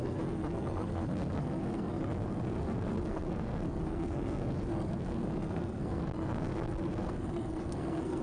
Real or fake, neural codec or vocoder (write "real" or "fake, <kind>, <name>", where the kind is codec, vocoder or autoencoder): fake, codec, SNAC